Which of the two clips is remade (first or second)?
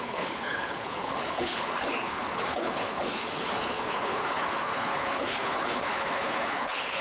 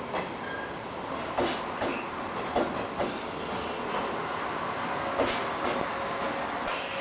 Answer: first